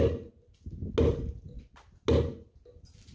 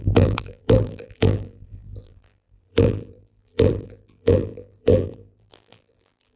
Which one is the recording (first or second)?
first